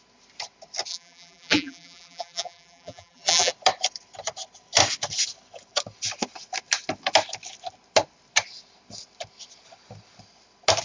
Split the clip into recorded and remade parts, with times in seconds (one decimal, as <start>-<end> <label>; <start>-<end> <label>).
0.0-0.9 recorded; 0.9-3.5 remade; 3.5-10.8 recorded